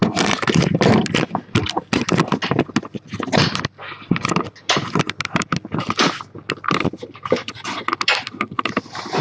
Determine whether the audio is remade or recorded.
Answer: recorded